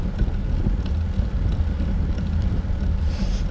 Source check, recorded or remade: recorded